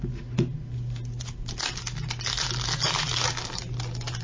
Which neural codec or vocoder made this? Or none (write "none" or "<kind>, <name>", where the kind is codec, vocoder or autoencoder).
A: none